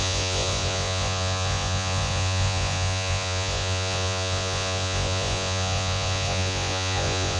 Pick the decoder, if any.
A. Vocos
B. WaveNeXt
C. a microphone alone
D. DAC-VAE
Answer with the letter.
A